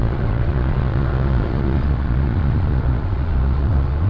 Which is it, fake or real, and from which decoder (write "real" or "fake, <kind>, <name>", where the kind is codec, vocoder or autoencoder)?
fake, vocoder, Vocos